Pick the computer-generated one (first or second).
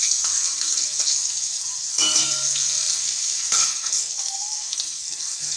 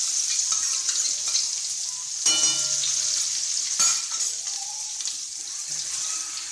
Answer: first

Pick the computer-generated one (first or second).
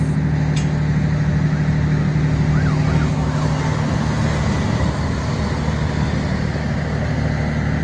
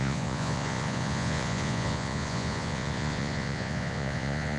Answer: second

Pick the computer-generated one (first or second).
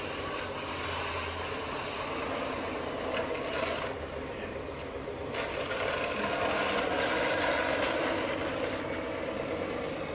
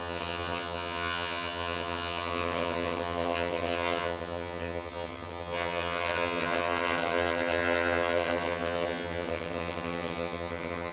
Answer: second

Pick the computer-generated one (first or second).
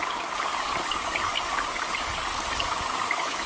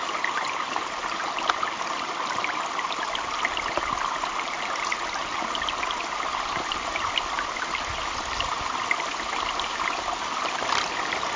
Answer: first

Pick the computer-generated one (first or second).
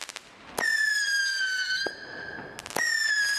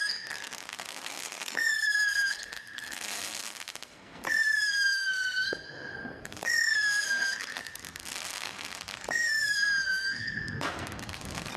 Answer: second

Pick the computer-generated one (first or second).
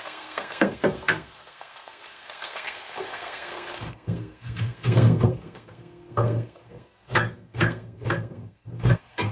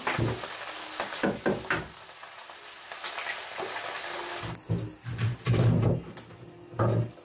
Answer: first